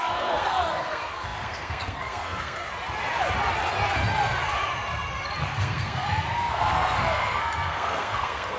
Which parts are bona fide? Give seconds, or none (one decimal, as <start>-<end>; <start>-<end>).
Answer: 2.6-5.4